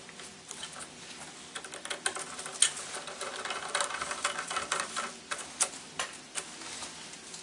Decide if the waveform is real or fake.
real